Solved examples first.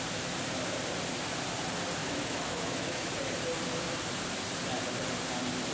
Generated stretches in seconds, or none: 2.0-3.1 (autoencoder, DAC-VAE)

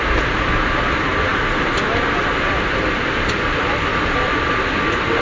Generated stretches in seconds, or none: 3.9-4.8 (vocoder, BigVGAN v2)

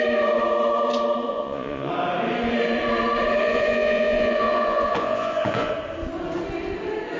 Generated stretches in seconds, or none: 1.3-1.9 (vocoder, Vocos); 3.4-5.7

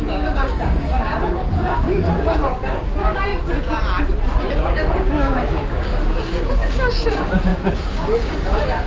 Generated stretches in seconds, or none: 0.0-3.3 (codec, DAC); 4.5-8.9

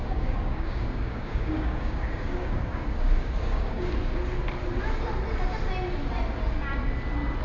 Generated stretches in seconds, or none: 0.0-3.9 (codec, DAC)

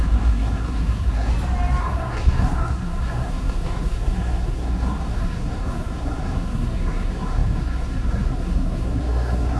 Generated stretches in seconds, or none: 0.0-1.3 (codec, SNAC); 1.8-9.6